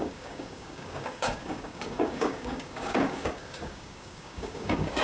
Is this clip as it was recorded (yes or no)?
no